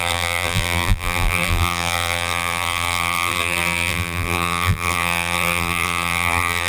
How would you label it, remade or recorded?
remade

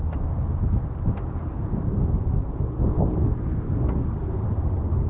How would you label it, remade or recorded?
recorded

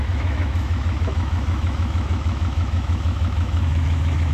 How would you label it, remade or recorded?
remade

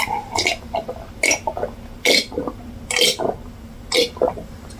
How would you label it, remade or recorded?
recorded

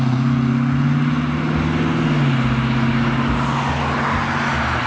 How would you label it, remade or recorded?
recorded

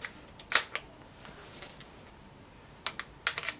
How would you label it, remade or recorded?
recorded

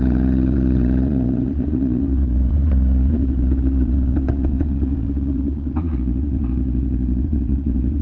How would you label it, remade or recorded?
remade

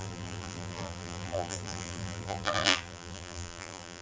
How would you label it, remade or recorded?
remade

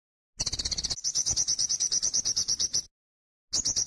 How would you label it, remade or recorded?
recorded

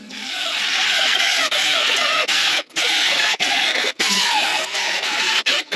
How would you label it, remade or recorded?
remade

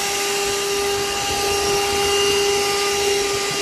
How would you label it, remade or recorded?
recorded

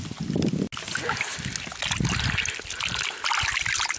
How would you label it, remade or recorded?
recorded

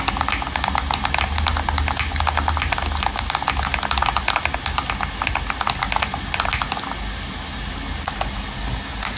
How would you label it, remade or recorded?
recorded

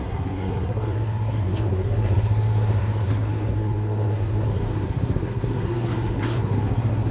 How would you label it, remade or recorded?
remade